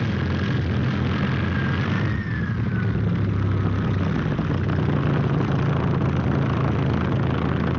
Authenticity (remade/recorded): recorded